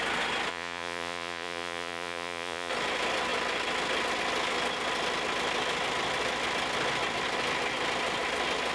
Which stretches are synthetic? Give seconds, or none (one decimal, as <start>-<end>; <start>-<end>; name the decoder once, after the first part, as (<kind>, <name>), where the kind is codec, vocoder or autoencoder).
0.5-2.7 (vocoder, Vocos)